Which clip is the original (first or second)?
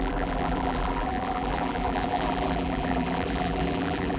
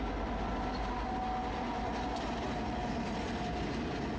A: second